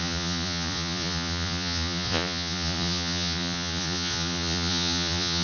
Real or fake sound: fake